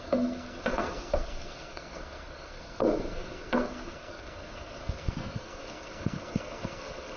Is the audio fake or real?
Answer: fake